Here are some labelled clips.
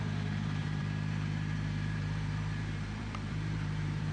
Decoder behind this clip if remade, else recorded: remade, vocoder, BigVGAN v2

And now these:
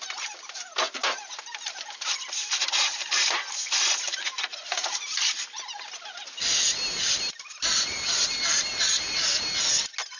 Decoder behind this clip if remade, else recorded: recorded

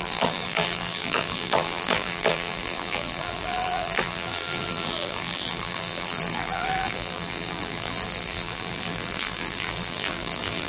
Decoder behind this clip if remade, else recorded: remade, vocoder, BigVGAN v2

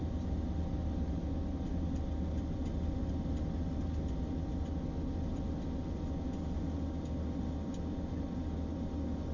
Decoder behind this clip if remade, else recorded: recorded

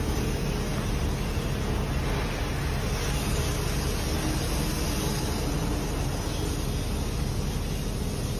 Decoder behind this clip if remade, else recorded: recorded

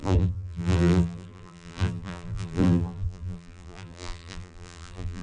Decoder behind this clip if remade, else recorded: remade, vocoder, BigVGAN v2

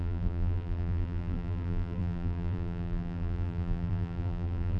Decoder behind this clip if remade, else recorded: remade, vocoder, BigVGAN v2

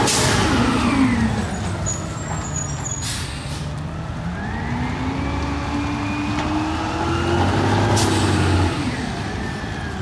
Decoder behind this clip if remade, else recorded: recorded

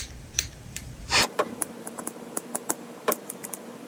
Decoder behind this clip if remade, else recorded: remade, vocoder, BigVGAN v2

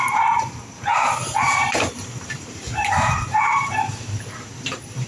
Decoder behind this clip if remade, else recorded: remade, vocoder, BigVGAN v2